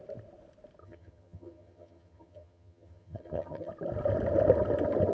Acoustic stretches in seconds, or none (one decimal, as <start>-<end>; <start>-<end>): 0.0-0.8; 3.7-5.1